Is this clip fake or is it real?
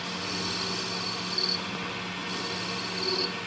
real